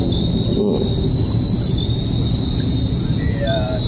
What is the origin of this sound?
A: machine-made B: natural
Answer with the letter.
B